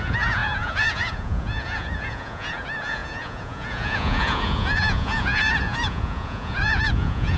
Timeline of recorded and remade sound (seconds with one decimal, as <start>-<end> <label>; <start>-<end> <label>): 0.0-7.4 remade

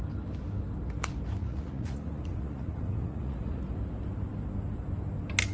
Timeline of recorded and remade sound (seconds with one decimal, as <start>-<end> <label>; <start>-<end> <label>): 0.0-1.4 recorded; 1.4-3.6 remade; 3.6-5.5 recorded

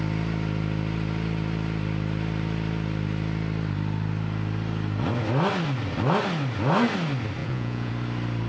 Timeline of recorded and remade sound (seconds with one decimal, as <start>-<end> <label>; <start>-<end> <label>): 0.0-7.4 recorded; 7.4-7.9 remade; 7.9-8.5 recorded

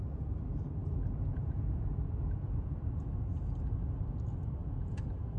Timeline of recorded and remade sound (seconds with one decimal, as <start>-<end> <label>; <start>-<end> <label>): 0.0-0.8 recorded; 0.8-3.2 remade; 3.2-4.6 recorded; 4.6-5.4 remade

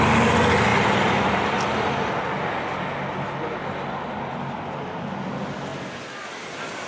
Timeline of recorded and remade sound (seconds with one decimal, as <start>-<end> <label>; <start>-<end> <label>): 0.0-6.9 recorded

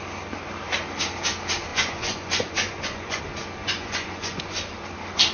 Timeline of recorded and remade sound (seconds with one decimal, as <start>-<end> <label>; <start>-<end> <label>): 0.0-1.7 recorded; 1.7-3.2 remade; 3.2-3.6 recorded; 3.6-4.6 remade; 4.6-5.3 recorded